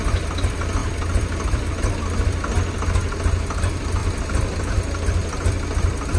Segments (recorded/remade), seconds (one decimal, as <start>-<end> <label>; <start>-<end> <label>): 0.0-0.8 recorded; 0.8-1.9 remade; 1.9-4.0 recorded; 4.0-4.7 remade; 4.7-6.2 recorded